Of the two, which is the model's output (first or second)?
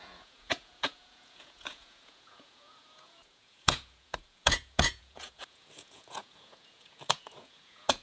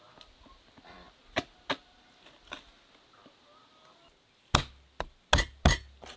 first